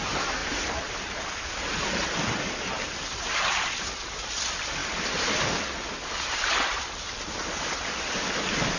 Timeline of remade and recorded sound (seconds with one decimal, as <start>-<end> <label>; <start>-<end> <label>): 0.0-0.4 recorded; 0.4-1.3 remade; 1.3-4.8 recorded; 4.8-5.4 remade; 5.4-8.8 recorded